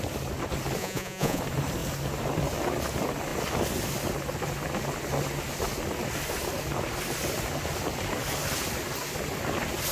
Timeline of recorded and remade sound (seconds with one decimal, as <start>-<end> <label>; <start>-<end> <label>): 0.0-0.8 recorded; 0.8-1.4 remade; 1.4-9.9 recorded